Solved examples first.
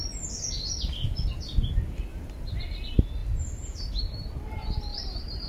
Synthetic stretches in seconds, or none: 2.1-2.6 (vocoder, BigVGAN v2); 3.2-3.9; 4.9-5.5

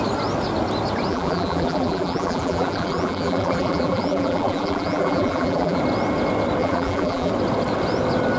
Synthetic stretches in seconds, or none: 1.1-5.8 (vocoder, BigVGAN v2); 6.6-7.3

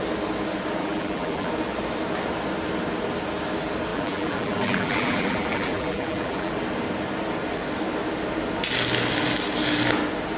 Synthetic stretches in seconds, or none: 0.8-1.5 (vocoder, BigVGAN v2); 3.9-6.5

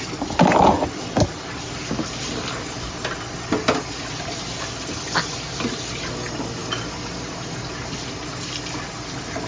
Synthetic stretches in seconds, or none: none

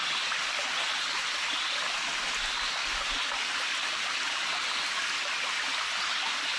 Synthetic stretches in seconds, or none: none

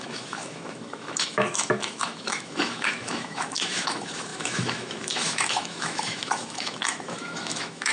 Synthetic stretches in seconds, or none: 0.0-7.9 (autoencoder, DAC-VAE)

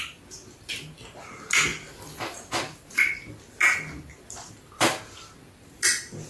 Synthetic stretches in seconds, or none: none

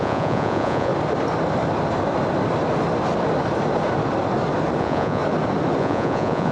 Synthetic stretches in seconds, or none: 0.0-0.9 (vocoder, Vocos); 4.8-5.2; 5.8-6.5